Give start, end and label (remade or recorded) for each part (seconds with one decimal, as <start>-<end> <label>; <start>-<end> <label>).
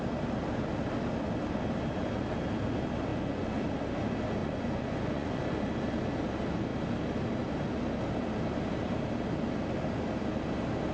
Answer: 0.0-3.1 recorded; 3.1-3.6 remade; 3.6-4.4 recorded; 4.4-5.4 remade; 5.4-10.9 recorded